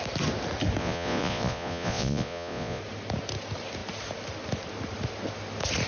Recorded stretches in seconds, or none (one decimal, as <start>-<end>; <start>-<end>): 0.0-0.8; 2.8-5.9